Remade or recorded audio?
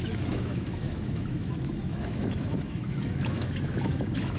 remade